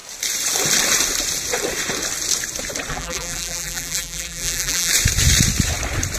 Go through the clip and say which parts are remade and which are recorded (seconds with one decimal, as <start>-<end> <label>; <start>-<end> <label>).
0.0-2.9 recorded; 2.9-4.9 remade; 4.9-6.2 recorded